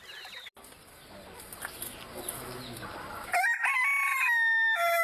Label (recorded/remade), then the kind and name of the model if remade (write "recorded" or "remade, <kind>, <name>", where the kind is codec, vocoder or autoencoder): recorded